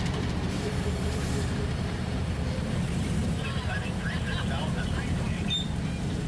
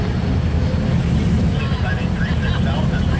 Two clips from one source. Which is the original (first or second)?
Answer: second